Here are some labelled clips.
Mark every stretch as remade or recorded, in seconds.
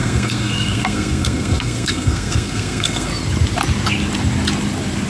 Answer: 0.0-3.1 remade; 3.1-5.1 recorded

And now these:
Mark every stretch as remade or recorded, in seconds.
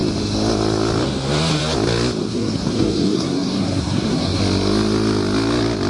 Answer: 0.0-2.2 recorded; 2.2-4.4 remade; 4.4-5.9 recorded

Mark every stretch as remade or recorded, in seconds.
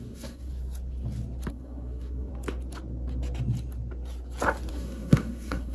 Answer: 0.0-0.5 remade; 0.5-1.5 recorded; 1.5-2.3 remade; 2.3-4.7 recorded; 4.7-5.7 remade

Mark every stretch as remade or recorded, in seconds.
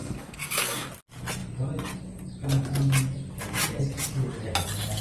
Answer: 0.0-0.9 remade; 0.9-5.0 recorded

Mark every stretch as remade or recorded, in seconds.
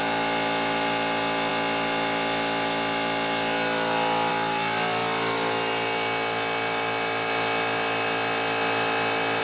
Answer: 0.0-9.4 recorded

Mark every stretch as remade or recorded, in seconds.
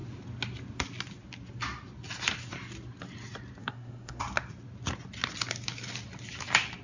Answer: 0.0-3.6 recorded; 3.6-4.2 remade; 4.2-6.8 recorded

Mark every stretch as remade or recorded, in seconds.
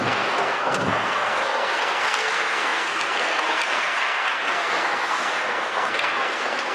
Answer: 0.0-6.7 remade